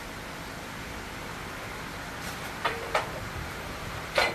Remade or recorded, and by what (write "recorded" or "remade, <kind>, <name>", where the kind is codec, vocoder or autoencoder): remade, vocoder, BigVGAN v2